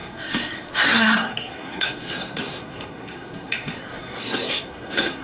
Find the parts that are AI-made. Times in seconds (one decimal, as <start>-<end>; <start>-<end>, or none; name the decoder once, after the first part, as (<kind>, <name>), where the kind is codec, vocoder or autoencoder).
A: 0.0-5.2 (codec, SNAC)